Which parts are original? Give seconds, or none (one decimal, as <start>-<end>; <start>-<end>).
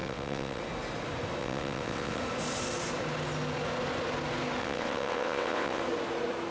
0.6-1.4; 2.2-4.6; 5.8-6.5